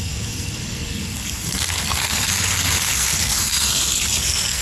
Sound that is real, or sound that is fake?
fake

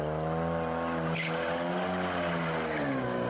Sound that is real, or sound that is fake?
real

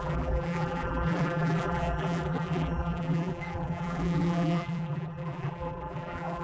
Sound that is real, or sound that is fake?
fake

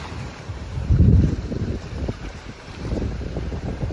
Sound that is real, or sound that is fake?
fake